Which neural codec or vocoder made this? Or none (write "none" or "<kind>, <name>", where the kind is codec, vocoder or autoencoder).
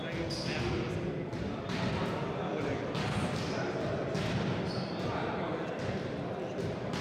none